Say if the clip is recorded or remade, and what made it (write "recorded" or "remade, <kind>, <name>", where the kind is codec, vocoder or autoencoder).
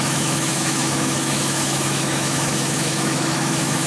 remade, autoencoder, DAC-VAE